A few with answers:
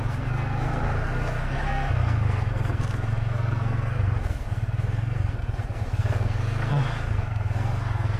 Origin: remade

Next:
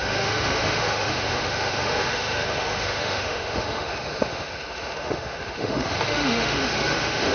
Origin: remade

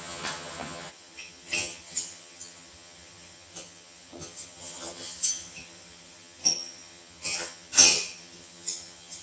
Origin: remade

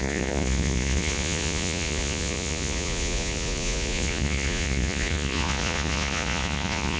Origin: remade